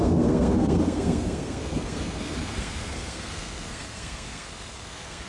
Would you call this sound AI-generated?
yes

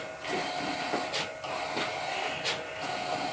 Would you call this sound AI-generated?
no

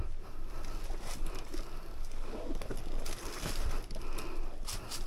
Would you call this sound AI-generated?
no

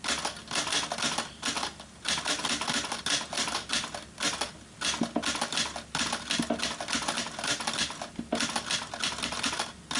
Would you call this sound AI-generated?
no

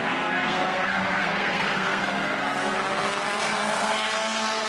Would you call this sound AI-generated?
yes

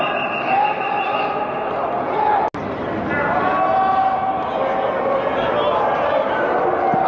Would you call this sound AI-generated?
no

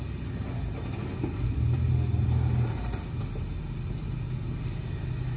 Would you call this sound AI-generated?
no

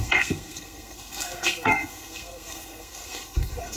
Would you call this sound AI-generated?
yes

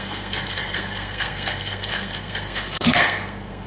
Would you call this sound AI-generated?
yes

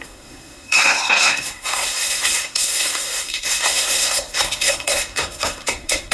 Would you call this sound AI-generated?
yes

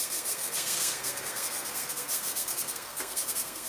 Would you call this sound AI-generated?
yes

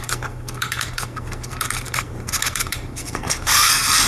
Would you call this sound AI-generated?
yes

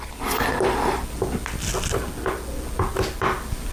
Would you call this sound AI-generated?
no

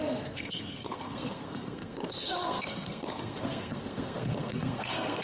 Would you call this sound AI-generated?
yes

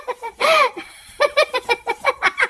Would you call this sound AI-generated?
no